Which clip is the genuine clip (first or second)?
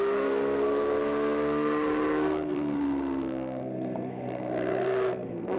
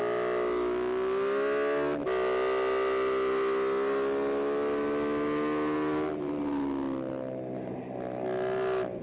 second